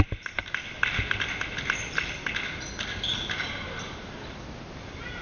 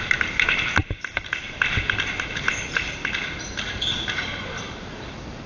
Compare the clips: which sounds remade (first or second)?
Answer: second